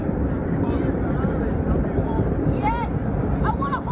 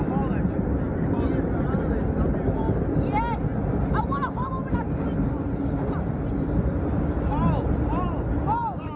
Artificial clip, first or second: first